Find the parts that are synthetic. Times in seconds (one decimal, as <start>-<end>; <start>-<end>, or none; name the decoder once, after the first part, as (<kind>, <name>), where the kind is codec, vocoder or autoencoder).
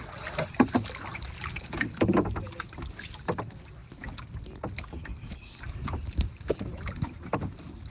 none